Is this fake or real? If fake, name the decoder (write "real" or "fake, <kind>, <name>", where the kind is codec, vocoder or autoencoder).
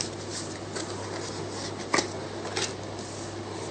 real